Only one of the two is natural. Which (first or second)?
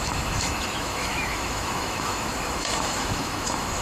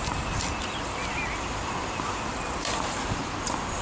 second